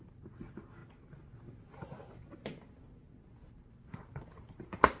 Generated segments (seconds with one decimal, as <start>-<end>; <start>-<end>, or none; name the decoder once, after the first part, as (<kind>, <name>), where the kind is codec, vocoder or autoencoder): none